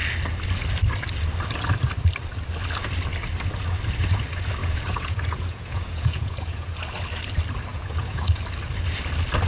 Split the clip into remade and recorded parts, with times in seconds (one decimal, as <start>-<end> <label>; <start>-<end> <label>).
0.0-4.6 recorded; 4.6-6.8 remade; 6.8-7.7 recorded; 7.7-8.4 remade; 8.4-9.5 recorded